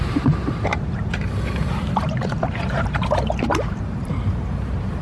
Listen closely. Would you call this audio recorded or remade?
remade